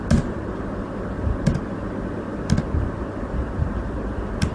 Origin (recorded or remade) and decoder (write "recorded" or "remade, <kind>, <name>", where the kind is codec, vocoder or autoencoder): recorded